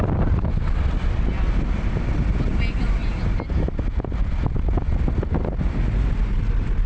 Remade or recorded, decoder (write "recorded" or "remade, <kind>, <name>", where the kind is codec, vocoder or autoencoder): recorded